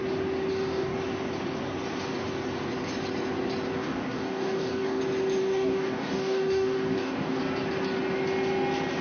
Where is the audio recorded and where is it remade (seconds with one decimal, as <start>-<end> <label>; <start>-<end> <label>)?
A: 0.0-0.5 recorded; 0.5-1.0 remade; 1.0-3.8 recorded; 3.8-5.0 remade; 5.0-5.4 recorded; 5.4-7.4 remade; 7.4-9.0 recorded